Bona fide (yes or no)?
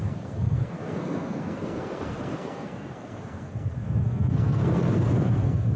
no